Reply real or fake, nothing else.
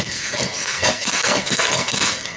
fake